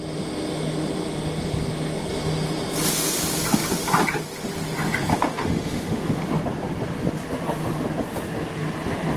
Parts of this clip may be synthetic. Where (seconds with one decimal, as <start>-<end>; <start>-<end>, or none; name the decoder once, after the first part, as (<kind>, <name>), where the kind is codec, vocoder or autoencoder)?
5.1-6.2 (autoencoder, DAC-VAE)